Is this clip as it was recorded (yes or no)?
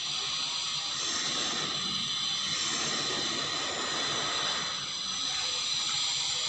yes